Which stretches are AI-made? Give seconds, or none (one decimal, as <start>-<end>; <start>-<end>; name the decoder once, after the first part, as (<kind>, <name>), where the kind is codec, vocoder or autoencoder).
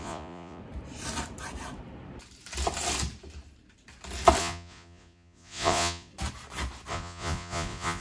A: 0.0-0.6 (vocoder, Vocos); 4.4-6.1; 6.9-8.0